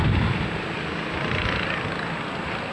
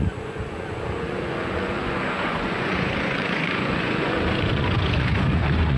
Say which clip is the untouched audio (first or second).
first